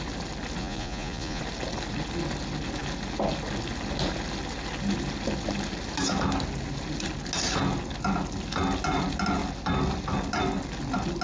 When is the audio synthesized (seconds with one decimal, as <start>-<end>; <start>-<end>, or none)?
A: 0.6-1.4